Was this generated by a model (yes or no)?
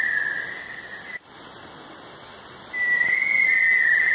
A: no